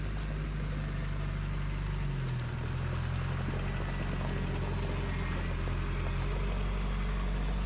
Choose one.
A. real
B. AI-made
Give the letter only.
A